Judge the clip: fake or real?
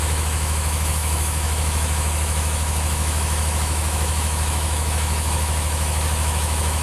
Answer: fake